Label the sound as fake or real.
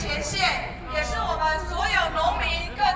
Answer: real